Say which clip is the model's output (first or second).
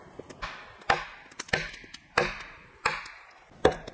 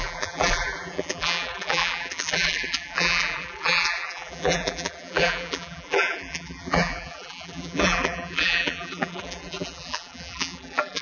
second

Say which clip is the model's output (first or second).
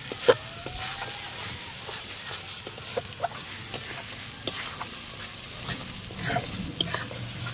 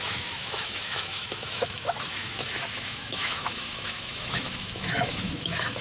second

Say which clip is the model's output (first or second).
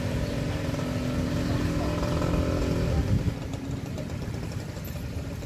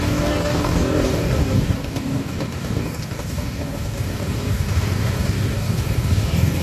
second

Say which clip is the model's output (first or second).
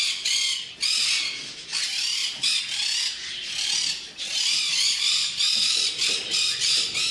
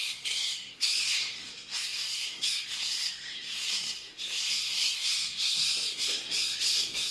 second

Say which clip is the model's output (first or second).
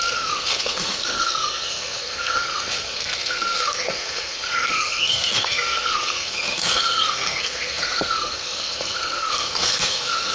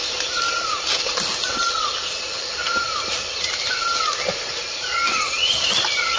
first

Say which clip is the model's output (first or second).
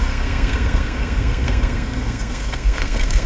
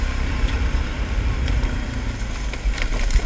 first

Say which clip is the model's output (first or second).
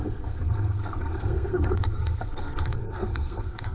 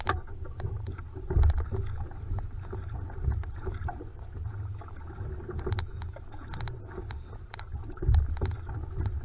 first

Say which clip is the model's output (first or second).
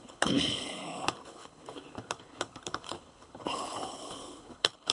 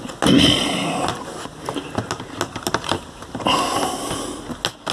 first